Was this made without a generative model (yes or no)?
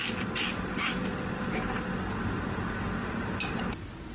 yes